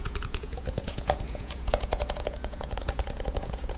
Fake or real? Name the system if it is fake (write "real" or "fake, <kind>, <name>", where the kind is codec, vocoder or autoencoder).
fake, vocoder, Vocos